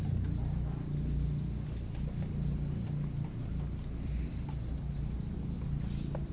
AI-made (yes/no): no